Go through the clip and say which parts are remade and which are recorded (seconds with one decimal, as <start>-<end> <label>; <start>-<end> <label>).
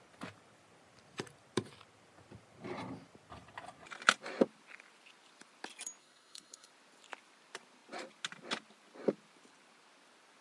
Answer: 0.0-6.0 recorded; 6.0-6.7 remade; 6.7-10.4 recorded